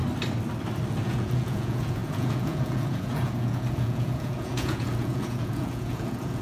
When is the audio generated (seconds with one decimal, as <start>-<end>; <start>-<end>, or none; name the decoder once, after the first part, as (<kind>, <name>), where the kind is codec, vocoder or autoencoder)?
0.9-6.4 (vocoder, Vocos)

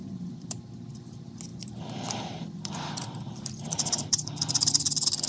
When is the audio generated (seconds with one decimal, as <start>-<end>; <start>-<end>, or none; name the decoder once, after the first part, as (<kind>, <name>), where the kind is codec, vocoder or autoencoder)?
0.0-1.1 (vocoder, BigVGAN v2); 1.5-4.7

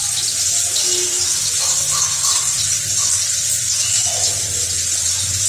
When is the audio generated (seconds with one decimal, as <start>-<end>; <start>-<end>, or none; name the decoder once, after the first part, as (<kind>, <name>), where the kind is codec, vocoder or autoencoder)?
2.3-2.9 (vocoder, BigVGAN v2)

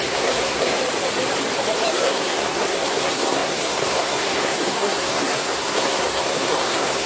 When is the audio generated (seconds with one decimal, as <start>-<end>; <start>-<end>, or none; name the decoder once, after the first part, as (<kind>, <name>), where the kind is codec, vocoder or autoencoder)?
0.0-0.8 (codec, SNAC); 1.9-7.1

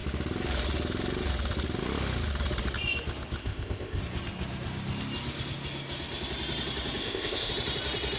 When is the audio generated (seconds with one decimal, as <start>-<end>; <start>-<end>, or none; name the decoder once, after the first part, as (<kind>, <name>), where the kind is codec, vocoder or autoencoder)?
3.4-4.0 (codec, ZipCodec); 7.0-7.5